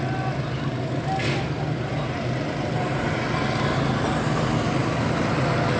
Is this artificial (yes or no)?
no